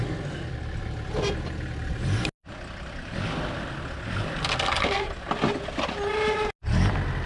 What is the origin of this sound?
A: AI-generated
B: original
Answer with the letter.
B